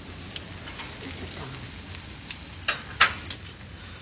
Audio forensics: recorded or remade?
recorded